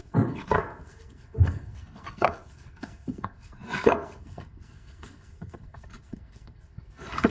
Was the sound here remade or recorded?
remade